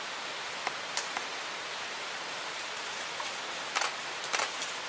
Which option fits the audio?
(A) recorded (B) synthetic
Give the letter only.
A